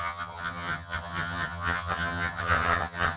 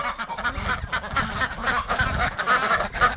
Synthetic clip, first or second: first